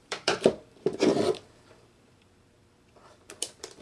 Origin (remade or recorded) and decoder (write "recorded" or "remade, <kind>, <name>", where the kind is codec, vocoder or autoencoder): remade, vocoder, BigVGAN v2